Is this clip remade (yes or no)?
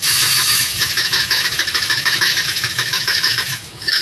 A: yes